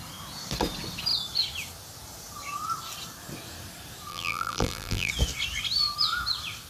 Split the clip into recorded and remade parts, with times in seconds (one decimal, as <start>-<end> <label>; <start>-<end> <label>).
0.0-4.1 recorded; 4.1-5.1 remade; 5.1-6.7 recorded